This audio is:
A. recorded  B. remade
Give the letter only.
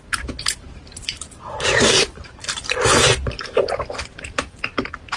B